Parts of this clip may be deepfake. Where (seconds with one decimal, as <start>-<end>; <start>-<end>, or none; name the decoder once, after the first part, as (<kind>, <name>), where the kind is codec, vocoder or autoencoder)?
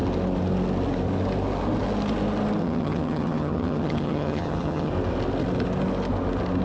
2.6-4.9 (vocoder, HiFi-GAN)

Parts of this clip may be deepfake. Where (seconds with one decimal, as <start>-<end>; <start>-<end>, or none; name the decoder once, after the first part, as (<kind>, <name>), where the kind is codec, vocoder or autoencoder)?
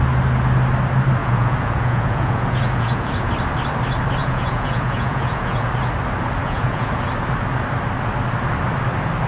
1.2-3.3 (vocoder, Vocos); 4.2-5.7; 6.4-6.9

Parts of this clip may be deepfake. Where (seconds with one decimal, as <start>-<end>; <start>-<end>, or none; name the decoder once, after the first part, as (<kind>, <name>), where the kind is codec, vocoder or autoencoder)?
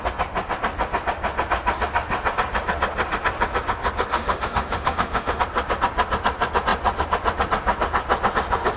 4.1-5.4 (autoencoder, DAC-VAE)